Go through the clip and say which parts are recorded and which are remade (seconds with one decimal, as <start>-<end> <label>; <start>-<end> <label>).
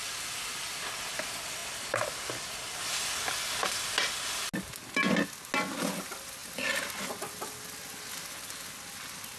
0.0-9.4 recorded